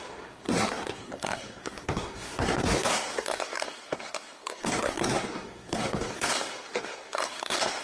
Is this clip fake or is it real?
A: fake